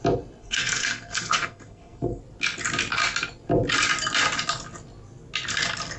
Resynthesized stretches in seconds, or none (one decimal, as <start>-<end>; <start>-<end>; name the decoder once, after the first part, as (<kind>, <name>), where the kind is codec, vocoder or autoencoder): 0.4-2.2 (codec, SNAC)

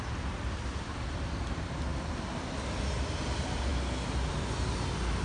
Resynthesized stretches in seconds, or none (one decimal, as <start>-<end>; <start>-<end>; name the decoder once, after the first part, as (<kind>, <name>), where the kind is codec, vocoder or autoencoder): none

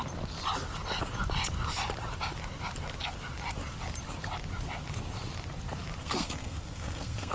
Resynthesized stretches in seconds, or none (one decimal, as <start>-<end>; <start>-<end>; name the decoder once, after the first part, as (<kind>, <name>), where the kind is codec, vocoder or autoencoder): 6.0-7.3 (codec, SNAC)

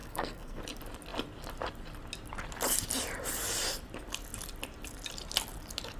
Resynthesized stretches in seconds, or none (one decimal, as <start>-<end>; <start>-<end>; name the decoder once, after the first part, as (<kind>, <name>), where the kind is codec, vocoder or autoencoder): 0.0-0.6 (codec, SNAC)